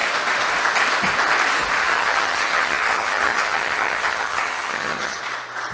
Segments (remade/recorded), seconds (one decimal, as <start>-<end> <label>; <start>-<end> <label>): 0.0-1.8 recorded; 1.8-5.2 remade; 5.2-5.7 recorded